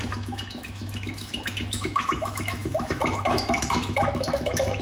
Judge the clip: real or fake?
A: fake